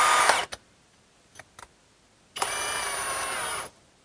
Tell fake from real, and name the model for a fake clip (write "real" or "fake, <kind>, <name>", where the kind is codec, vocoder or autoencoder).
real